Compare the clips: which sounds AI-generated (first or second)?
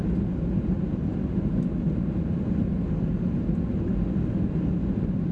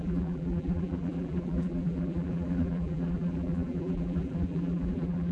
second